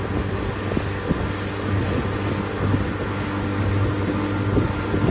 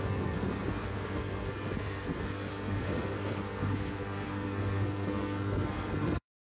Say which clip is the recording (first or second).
first